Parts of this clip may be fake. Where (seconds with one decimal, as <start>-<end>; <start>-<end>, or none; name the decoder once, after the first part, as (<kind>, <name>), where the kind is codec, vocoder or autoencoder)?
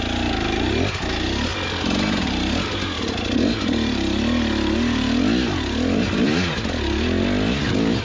none